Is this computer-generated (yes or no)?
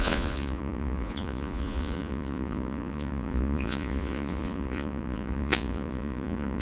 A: yes